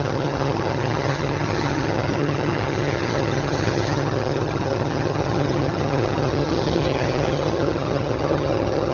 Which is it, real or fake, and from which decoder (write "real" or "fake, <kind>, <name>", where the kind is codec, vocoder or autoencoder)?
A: fake, vocoder, HiFi-GAN